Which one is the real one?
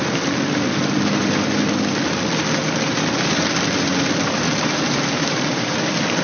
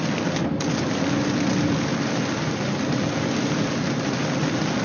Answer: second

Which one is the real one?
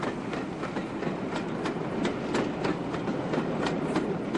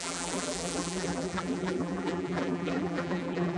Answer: first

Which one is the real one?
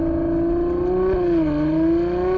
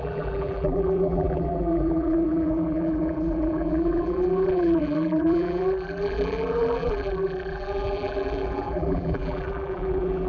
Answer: first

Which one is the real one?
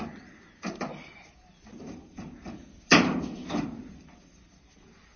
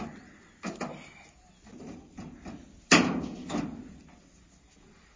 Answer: second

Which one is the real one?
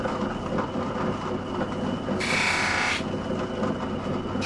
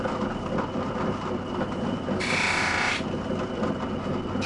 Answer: first